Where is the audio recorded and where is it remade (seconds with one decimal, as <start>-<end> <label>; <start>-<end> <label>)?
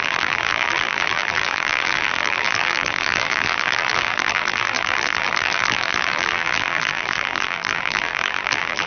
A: 0.0-8.9 remade